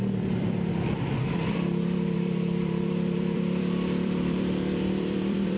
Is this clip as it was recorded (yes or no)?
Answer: no